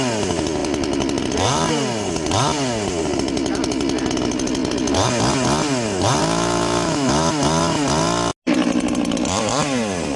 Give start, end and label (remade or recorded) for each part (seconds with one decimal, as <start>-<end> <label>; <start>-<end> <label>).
0.0-6.2 recorded; 6.2-7.3 remade; 7.3-10.2 recorded